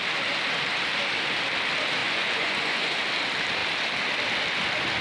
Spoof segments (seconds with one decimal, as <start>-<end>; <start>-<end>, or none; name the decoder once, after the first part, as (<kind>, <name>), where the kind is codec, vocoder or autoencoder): 2.0-3.0 (vocoder, Vocos)